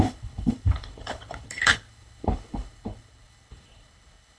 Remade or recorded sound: remade